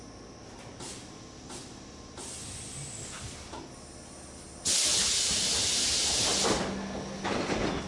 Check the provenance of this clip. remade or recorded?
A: recorded